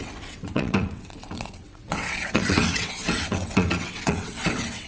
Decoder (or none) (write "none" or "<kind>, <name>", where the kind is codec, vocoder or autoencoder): vocoder, WaveNeXt